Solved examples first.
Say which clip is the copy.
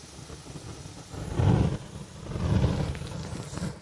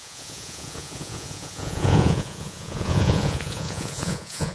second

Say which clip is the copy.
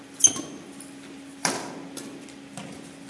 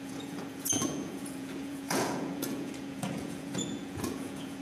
second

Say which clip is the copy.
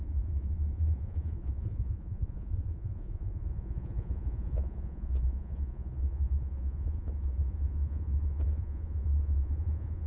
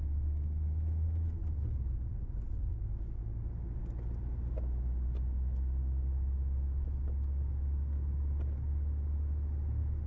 first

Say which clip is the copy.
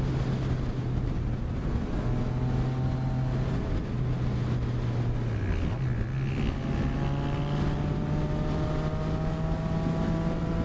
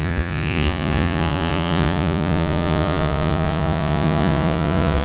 second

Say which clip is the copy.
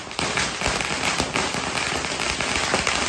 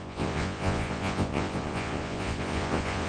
second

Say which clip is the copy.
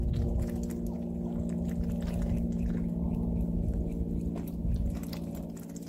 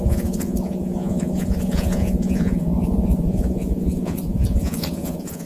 second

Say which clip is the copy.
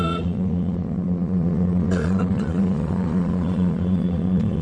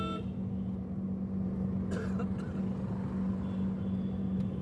first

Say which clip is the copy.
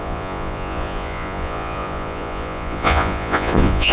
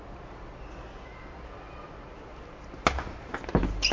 first